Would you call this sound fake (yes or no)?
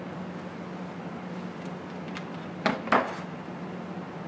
no